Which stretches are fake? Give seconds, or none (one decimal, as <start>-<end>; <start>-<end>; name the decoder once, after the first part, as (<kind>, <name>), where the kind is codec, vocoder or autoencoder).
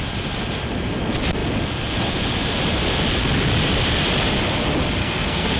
5.0-5.6 (codec, SNAC)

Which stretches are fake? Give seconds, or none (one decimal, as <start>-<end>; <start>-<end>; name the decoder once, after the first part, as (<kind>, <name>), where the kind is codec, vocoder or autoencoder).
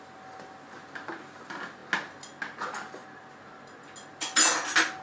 none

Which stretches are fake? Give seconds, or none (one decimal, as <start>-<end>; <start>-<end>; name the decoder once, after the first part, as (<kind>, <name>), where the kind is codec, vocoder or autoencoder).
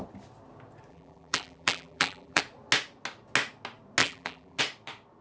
0.9-2.4 (vocoder, BigVGAN v2); 4.0-4.6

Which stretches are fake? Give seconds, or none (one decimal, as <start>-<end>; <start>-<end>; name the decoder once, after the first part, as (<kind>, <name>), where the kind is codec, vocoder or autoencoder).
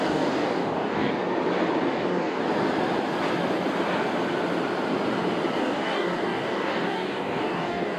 0.0-1.1 (codec, DAC); 1.9-2.4; 5.6-8.0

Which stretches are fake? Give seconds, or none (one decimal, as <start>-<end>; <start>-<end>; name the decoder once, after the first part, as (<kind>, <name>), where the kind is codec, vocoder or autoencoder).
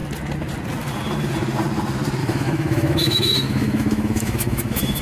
2.2-5.0 (autoencoder, DAC-VAE)